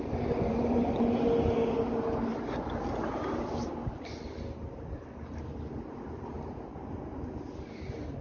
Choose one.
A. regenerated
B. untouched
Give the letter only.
B